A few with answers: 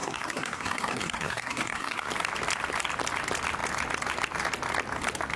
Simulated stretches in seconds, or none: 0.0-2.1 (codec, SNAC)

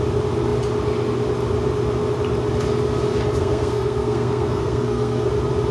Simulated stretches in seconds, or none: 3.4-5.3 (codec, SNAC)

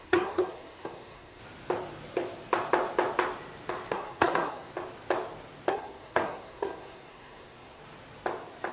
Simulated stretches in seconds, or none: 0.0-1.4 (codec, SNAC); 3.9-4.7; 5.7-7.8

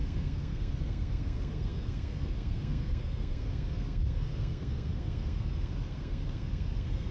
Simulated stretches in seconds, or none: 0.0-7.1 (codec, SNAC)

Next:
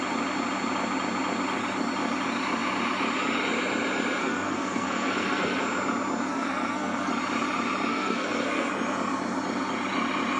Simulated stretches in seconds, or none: 4.2-5.6 (codec, SNAC); 6.3-7.1; 7.9-8.7

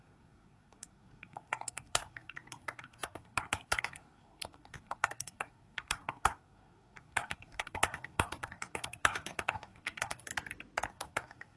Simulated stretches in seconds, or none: 0.0-10.3 (codec, SNAC); 10.9-11.6

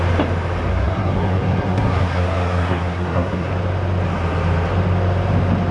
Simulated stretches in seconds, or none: 0.7-3.5 (codec, SNAC)

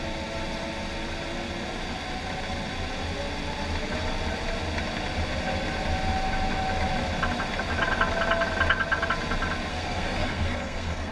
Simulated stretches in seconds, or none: 9.7-11.1 (codec, SNAC)